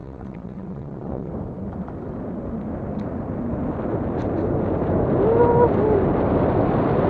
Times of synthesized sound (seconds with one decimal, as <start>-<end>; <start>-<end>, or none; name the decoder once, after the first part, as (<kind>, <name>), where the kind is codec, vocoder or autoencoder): 0.0-1.3 (vocoder, WaveNeXt)